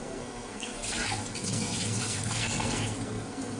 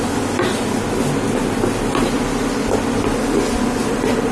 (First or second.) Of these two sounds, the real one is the second